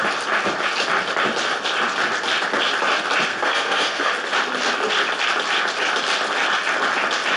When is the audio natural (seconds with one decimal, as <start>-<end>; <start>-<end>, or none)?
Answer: 0.0-3.3; 4.1-7.4